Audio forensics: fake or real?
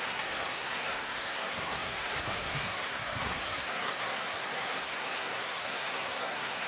fake